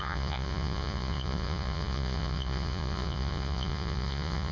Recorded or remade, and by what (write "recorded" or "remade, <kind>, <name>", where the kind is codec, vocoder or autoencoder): remade, vocoder, Vocos